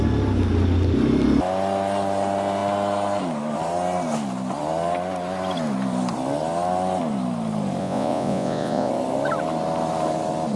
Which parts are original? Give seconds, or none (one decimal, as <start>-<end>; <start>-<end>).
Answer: 0.0-7.8; 8.9-10.6